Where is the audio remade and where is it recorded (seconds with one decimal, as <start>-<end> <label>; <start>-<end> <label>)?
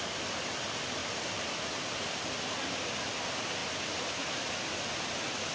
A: 0.0-5.5 recorded